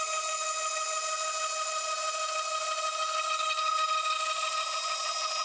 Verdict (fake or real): real